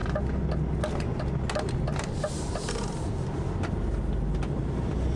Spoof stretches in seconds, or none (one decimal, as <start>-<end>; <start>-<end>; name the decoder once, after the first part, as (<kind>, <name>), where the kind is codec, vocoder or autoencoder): none